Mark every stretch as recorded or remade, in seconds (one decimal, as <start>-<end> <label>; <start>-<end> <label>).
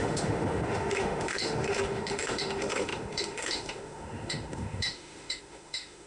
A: 0.0-6.1 remade